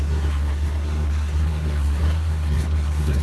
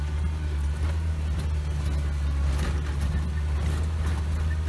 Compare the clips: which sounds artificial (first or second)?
first